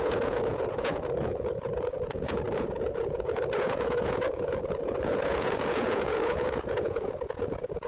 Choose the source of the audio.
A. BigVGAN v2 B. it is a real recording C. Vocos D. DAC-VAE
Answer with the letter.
C